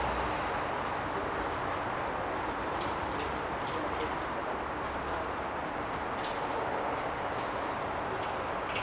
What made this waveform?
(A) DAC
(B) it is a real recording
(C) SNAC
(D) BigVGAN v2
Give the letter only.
B